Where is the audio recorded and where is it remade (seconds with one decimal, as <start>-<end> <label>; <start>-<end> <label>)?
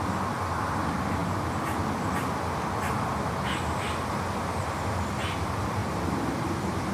0.0-6.9 recorded